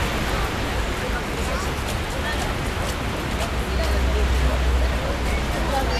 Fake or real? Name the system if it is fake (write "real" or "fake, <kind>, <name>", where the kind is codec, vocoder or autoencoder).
real